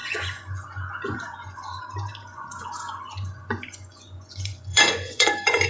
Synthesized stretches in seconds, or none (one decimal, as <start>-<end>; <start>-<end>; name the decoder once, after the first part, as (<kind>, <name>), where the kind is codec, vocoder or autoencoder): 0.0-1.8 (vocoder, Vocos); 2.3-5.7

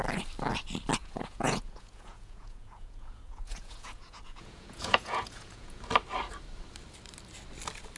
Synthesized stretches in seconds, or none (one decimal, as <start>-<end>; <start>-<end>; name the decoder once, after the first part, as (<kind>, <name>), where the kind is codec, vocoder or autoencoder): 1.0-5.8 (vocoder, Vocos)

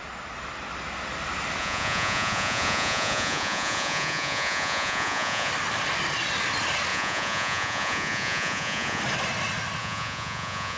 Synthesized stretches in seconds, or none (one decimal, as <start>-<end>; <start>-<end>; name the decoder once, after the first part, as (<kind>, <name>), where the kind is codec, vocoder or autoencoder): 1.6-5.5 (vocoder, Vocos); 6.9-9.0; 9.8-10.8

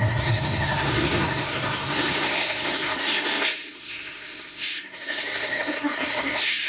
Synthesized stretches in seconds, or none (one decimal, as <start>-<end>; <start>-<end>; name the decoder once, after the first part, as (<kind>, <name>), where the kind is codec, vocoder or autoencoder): 0.0-6.7 (codec, SNAC)